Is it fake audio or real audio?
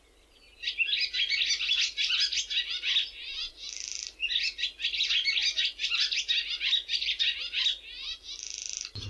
real